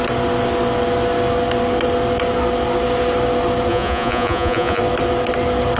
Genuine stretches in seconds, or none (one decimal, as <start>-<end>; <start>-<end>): 0.0-3.7; 4.8-5.8